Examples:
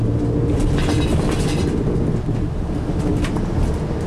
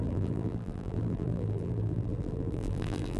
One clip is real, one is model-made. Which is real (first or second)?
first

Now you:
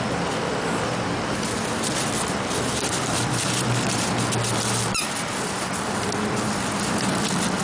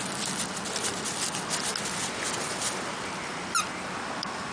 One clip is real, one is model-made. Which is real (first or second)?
second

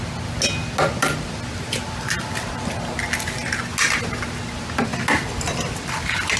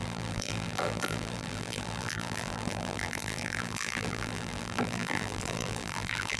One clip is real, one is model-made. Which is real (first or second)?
first